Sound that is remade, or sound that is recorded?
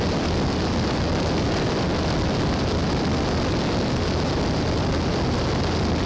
recorded